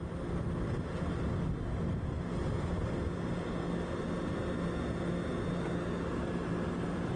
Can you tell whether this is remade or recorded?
recorded